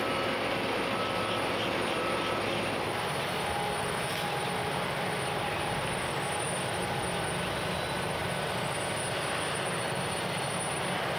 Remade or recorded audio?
recorded